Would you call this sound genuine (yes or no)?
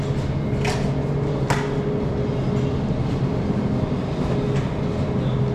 yes